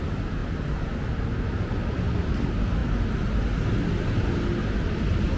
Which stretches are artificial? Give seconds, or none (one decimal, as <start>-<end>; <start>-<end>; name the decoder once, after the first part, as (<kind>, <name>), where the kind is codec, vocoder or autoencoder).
none

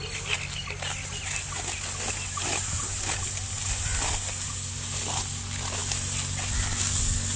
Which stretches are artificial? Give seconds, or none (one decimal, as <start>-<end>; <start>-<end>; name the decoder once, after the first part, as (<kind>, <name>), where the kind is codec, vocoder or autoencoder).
none